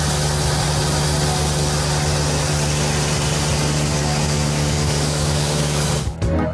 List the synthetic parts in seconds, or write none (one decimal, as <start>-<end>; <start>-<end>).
4.0-5.9